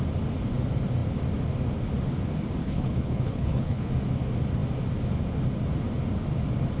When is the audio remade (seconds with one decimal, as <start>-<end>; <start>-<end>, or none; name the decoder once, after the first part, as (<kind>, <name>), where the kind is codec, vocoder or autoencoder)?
2.6-3.9 (codec, HILCodec)